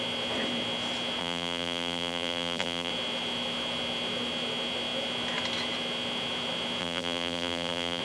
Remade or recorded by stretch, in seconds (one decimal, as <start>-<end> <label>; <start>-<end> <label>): 0.0-1.2 recorded; 1.2-2.9 remade; 2.9-6.8 recorded; 6.8-8.0 remade